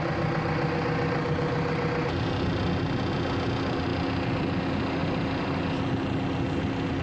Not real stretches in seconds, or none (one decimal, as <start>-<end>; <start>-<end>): 5.0-5.6